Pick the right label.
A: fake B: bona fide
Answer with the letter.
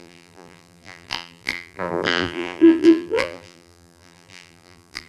A